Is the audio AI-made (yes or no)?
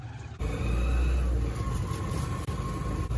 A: no